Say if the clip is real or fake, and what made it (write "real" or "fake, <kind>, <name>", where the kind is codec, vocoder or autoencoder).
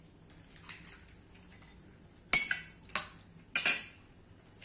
real